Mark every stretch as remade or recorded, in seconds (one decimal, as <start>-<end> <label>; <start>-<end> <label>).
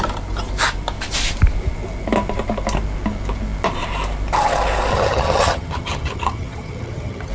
0.0-4.9 recorded; 4.9-7.3 remade